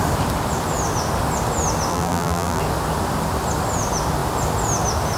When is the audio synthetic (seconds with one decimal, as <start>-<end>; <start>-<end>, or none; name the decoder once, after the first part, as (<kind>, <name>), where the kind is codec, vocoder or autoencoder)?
1.9-2.6 (vocoder, BigVGAN v2)